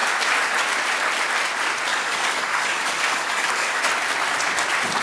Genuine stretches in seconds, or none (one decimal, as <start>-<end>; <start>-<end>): 0.0-1.9; 3.8-5.0